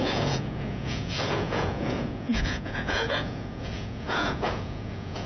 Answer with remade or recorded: remade